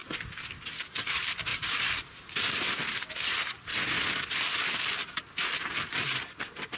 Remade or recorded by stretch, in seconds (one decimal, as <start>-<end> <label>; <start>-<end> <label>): 0.0-0.8 recorded; 0.8-3.7 remade; 3.7-4.8 recorded; 4.8-6.8 remade